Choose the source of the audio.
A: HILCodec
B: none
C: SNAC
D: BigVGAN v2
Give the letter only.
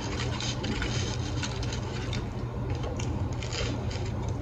B